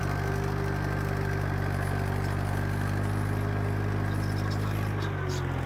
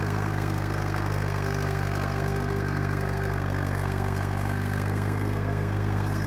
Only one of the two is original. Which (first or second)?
first